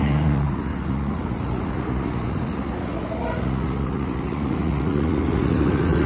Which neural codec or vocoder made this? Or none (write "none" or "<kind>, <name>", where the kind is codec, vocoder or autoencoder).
vocoder, Vocos